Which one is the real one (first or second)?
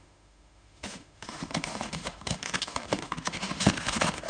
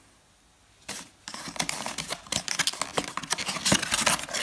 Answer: second